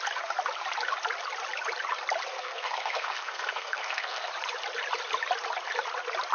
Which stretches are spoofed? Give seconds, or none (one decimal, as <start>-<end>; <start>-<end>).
2.3-4.3